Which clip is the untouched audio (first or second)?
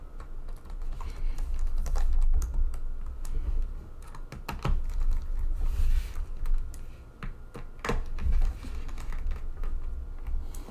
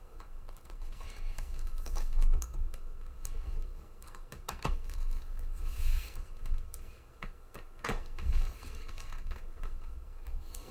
first